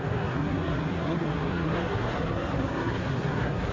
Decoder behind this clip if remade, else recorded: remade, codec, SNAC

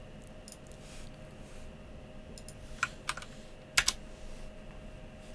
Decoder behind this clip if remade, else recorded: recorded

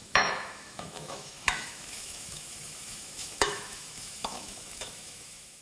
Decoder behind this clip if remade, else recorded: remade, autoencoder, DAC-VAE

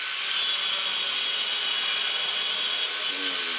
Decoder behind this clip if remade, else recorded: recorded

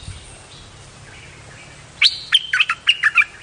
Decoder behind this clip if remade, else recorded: recorded